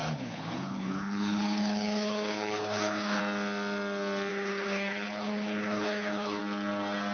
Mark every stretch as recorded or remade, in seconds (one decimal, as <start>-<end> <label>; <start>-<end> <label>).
0.0-3.2 remade; 3.2-4.3 recorded; 4.3-6.4 remade; 6.4-7.1 recorded